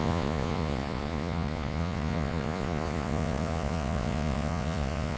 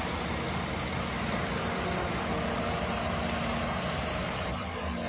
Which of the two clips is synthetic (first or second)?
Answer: first